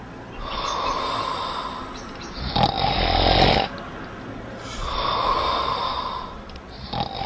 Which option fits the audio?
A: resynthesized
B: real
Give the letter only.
B